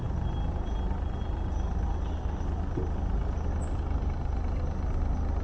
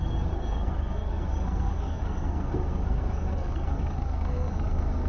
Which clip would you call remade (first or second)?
second